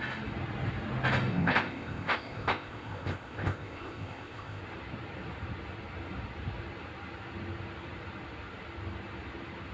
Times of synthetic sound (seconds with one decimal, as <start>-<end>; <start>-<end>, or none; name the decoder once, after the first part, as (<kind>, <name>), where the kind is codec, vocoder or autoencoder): 1.3-4.6 (codec, ZipCodec)